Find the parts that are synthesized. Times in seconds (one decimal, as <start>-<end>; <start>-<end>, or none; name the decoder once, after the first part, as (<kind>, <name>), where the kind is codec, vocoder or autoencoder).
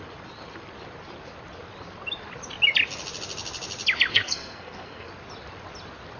4.1-5.1 (codec, SNAC)